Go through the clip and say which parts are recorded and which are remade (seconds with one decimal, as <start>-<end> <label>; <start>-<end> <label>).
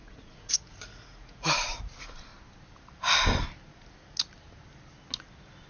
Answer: 0.0-2.3 remade; 2.3-5.7 recorded